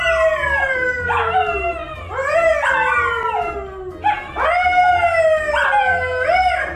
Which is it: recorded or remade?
recorded